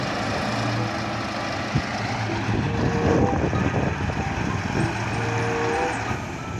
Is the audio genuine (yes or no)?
yes